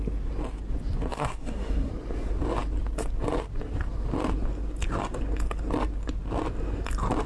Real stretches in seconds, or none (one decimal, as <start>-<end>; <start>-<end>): 0.0-1.1; 1.9-7.3